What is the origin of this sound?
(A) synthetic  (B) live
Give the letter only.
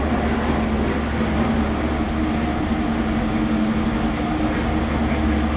B